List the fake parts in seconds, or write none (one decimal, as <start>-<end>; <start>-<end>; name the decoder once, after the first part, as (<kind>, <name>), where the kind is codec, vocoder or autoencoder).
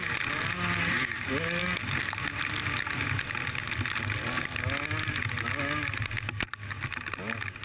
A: none